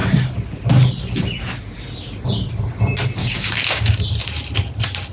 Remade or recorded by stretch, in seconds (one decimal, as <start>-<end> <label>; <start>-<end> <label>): 0.0-3.2 recorded; 3.2-4.0 remade; 4.0-5.1 recorded